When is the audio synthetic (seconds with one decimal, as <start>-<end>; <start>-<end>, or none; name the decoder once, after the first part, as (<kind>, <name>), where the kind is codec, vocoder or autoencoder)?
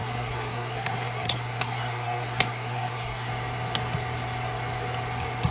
0.0-3.3 (codec, SNAC)